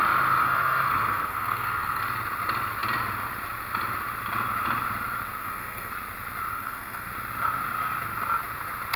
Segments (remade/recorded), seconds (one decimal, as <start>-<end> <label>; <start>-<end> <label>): 0.0-0.4 recorded; 0.4-2.0 remade; 2.0-5.4 recorded; 5.4-5.9 remade; 5.9-6.5 recorded; 6.5-7.1 remade; 7.1-9.0 recorded